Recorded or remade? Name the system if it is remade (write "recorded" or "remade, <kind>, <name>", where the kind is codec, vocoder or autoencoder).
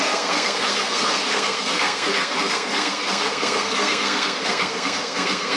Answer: remade, codec, SNAC